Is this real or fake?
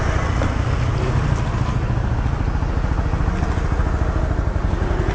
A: real